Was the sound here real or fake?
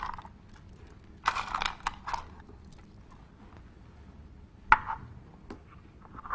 real